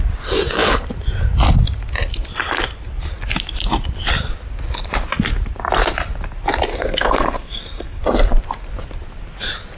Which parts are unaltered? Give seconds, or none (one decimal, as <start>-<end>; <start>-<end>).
0.0-6.7; 8.0-9.8